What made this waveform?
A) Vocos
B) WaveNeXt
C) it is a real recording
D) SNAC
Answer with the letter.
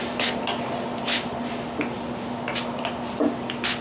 C